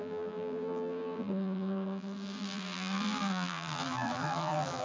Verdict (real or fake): fake